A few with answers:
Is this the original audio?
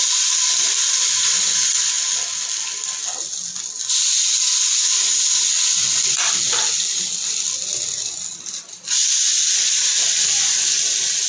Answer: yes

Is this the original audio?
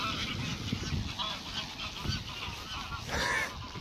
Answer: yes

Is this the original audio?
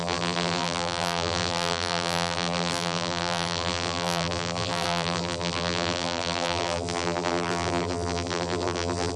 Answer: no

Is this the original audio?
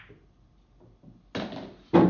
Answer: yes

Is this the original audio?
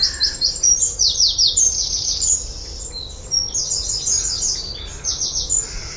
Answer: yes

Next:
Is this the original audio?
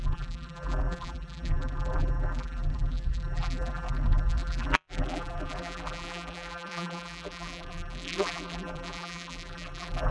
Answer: no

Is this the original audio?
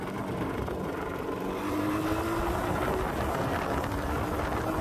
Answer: yes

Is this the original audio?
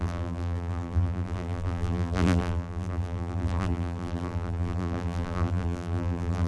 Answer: no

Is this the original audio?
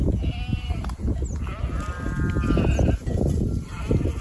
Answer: yes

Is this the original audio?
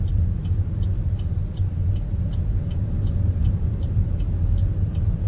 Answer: yes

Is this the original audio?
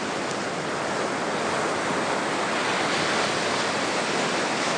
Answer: yes